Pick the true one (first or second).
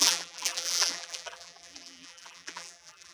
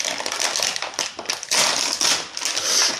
second